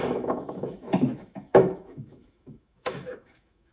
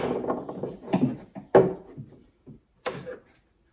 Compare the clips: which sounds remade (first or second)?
first